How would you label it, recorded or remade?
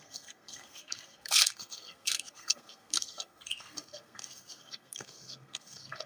remade